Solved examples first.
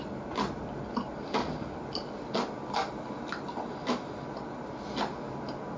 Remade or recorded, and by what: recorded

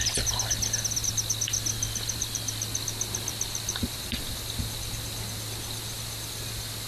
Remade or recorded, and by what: recorded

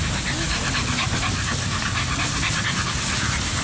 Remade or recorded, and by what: recorded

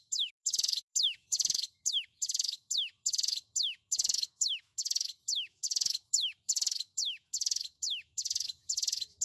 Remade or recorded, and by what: remade, autoencoder, DAC-VAE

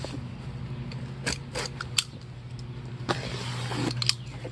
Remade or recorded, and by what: recorded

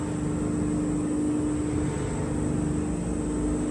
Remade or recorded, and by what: recorded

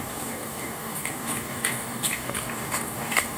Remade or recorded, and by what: remade, codec, DAC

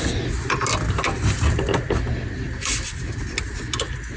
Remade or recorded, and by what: recorded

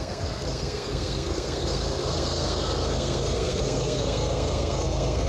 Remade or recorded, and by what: remade, codec, SNAC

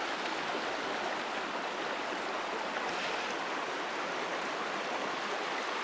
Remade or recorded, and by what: recorded